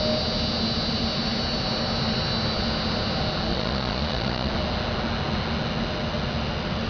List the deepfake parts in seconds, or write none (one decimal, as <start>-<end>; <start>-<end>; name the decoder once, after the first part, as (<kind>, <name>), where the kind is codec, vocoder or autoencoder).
3.5-4.5 (vocoder, Vocos)